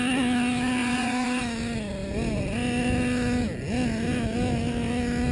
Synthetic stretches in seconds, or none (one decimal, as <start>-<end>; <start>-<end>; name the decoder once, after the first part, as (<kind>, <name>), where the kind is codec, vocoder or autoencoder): 0.8-1.4 (vocoder, Vocos)